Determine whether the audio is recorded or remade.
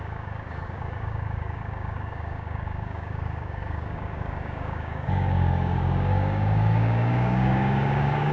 remade